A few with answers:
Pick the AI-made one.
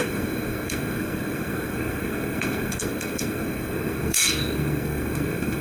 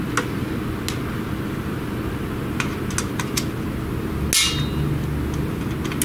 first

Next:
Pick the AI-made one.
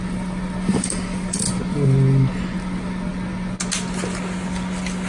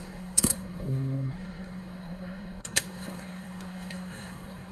second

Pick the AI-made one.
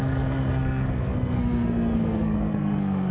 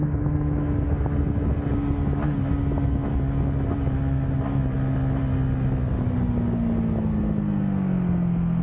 first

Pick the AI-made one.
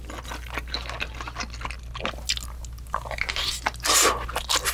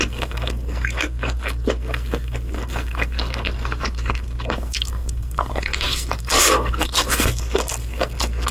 second